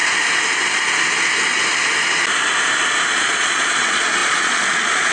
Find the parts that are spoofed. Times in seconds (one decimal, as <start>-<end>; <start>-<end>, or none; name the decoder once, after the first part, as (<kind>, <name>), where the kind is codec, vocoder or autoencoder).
3.1-5.1 (vocoder, Vocos)